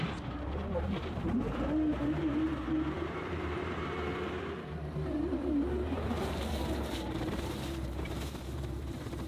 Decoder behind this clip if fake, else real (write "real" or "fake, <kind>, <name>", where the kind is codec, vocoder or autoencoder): fake, vocoder, BigVGAN v2